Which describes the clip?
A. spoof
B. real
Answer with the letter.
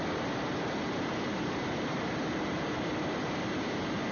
A